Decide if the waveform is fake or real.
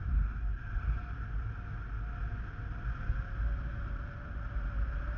real